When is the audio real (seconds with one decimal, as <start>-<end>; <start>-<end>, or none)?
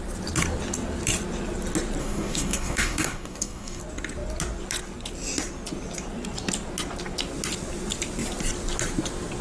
0.0-2.0; 3.8-9.4